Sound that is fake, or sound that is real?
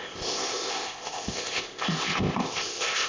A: fake